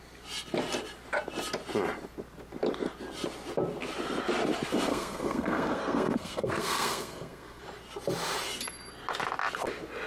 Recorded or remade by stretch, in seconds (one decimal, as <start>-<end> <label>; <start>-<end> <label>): 0.0-4.9 recorded; 4.9-7.6 remade; 7.6-10.1 recorded